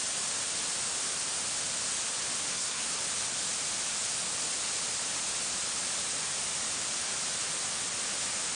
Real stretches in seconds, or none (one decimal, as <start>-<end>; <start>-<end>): 0.0-2.5; 3.0-8.5